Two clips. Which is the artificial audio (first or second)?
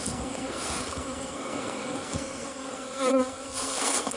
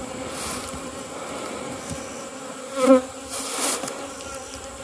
first